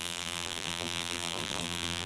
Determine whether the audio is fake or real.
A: fake